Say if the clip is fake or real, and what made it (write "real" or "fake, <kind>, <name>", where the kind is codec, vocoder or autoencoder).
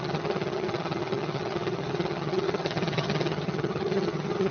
fake, vocoder, HiFi-GAN